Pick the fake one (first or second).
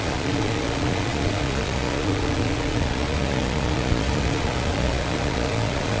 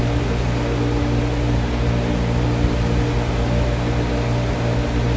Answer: first